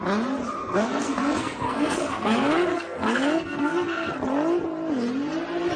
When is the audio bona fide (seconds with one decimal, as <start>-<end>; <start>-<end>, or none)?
0.0-0.6; 4.1-5.8